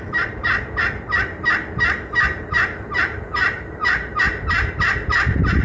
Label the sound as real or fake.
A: real